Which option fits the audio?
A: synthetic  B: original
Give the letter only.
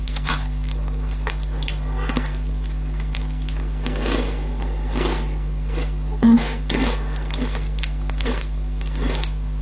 A